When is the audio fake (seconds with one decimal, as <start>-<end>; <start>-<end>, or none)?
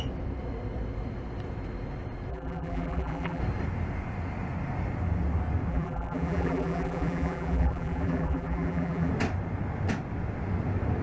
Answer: 2.3-3.4; 5.7-9.1